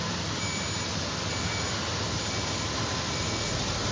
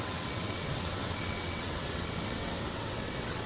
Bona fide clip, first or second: first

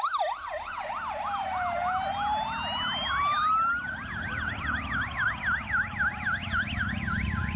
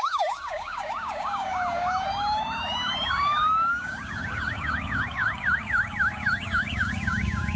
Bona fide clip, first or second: first